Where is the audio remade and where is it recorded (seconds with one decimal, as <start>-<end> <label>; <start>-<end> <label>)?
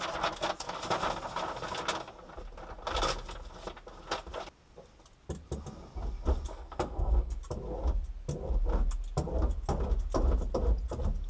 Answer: 0.0-6.5 recorded; 6.5-7.4 remade; 7.4-11.3 recorded